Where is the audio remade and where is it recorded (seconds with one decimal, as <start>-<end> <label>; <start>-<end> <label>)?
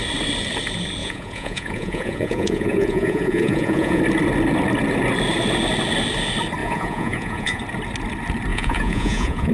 0.0-1.0 recorded; 1.0-4.0 remade; 4.0-6.6 recorded; 6.6-7.6 remade; 7.6-8.5 recorded; 8.5-9.5 remade